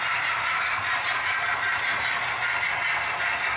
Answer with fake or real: real